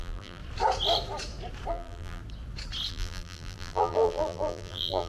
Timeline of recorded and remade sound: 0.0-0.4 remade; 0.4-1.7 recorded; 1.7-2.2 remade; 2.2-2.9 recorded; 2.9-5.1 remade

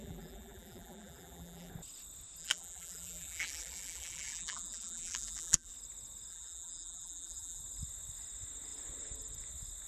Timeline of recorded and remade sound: 0.0-1.7 remade; 1.7-2.4 recorded; 2.4-5.7 remade; 5.7-6.3 recorded; 6.3-7.6 remade; 7.6-9.9 recorded